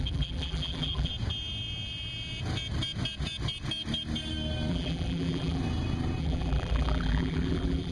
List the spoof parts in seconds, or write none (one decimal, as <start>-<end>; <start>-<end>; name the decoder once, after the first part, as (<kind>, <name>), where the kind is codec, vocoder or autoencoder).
0.0-1.1 (vocoder, BigVGAN v2); 4.7-5.6; 6.2-7.9